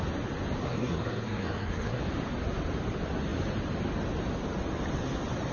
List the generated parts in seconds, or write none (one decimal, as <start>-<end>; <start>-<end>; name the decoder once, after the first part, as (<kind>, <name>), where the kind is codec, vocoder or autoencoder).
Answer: 0.6-2.0 (codec, SNAC)